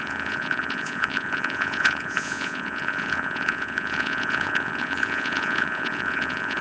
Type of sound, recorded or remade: remade